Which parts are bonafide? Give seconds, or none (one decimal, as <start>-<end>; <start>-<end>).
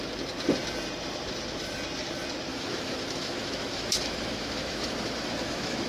0.0-2.5